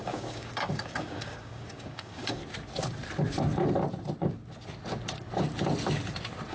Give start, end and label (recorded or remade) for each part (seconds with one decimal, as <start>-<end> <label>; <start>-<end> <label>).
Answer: 0.0-2.4 remade; 2.4-6.5 recorded